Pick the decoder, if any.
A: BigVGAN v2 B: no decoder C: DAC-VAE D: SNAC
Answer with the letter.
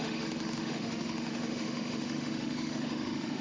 C